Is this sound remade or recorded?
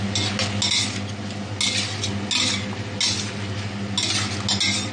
recorded